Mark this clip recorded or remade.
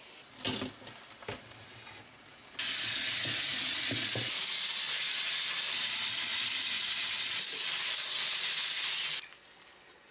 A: recorded